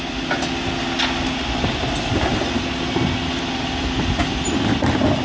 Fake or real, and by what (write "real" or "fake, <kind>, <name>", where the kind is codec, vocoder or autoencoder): real